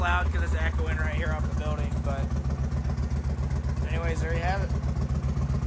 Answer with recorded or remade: recorded